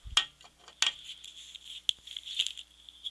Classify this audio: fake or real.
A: real